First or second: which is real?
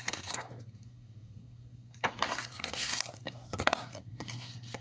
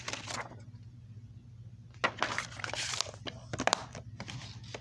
second